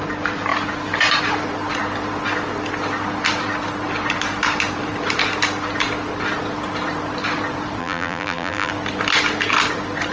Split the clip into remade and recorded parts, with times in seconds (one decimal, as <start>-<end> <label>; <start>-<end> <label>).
0.0-7.8 recorded; 7.8-8.7 remade; 8.7-10.1 recorded